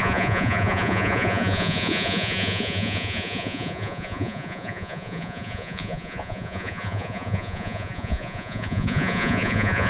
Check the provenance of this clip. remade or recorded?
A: remade